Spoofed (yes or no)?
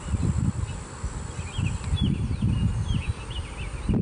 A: no